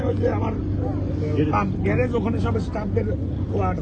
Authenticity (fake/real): real